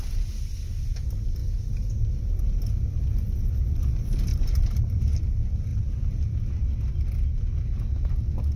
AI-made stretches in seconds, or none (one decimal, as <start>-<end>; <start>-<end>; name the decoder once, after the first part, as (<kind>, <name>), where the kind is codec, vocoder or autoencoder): 4.3-5.0 (vocoder, BigVGAN v2)